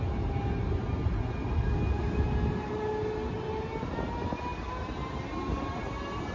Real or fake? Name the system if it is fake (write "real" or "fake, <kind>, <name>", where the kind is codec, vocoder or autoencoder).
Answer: real